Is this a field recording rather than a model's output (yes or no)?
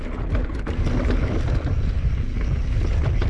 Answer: yes